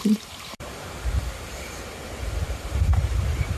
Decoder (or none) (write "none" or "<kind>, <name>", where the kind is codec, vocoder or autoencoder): vocoder, BigVGAN v2